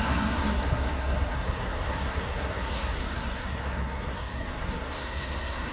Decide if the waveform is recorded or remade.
remade